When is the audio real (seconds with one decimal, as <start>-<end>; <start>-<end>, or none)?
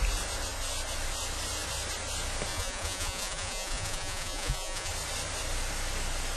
0.0-2.5; 4.9-6.4